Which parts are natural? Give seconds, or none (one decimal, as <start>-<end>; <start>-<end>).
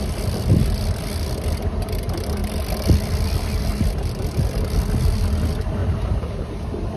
0.0-5.8